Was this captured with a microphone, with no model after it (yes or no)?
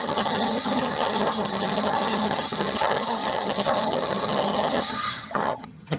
no